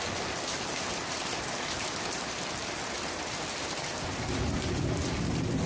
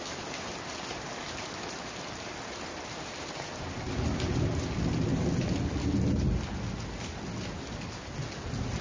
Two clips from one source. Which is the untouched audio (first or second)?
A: second